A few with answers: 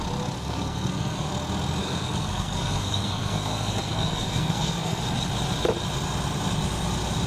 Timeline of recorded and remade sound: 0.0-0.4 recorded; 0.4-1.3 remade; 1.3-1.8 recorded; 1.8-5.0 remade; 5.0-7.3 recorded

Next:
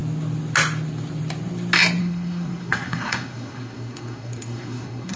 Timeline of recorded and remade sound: 0.0-2.0 recorded; 2.0-5.2 remade

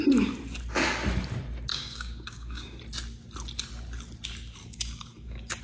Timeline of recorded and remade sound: 0.0-1.7 recorded; 1.7-2.8 remade; 2.8-4.6 recorded; 4.6-5.6 remade

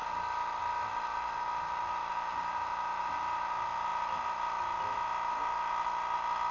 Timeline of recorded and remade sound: 0.0-6.5 recorded

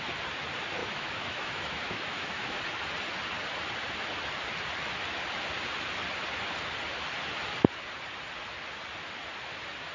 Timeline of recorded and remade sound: 0.0-0.8 recorded; 0.8-2.6 remade; 2.6-9.9 recorded

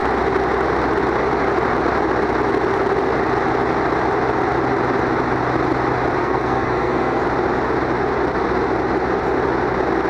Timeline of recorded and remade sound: 0.0-6.2 recorded; 6.2-7.2 remade; 7.2-10.1 recorded